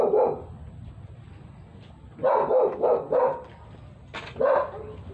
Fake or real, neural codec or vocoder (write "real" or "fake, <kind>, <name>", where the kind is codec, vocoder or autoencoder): real